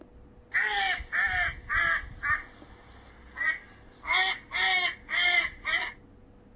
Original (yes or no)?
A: yes